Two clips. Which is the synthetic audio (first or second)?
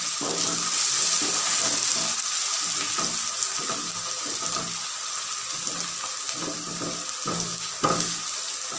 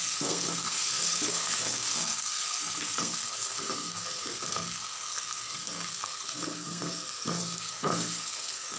second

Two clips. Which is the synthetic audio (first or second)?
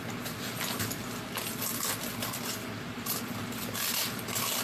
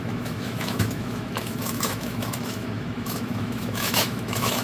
second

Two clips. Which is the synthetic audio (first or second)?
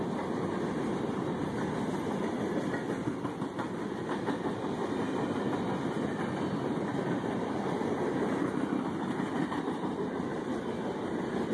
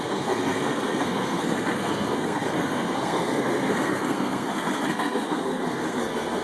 second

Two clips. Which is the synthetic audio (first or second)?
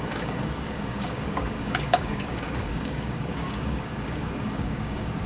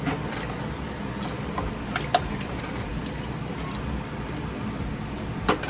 first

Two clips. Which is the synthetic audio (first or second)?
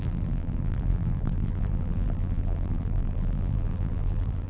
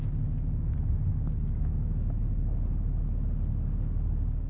first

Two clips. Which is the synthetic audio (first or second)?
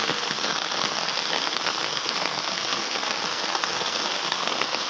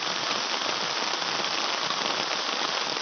first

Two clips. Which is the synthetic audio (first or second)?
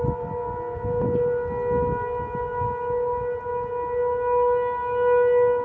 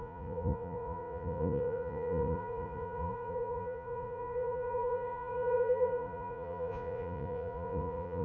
second